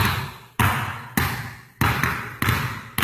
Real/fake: real